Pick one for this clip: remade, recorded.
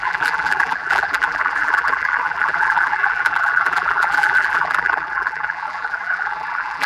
remade